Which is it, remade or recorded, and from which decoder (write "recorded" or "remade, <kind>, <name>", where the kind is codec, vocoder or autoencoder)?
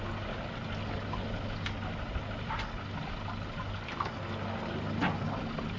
recorded